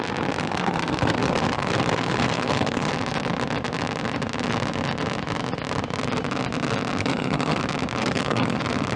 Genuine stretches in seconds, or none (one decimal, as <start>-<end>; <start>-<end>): 0.0-0.4; 2.9-7.0; 7.6-8.0; 8.6-9.0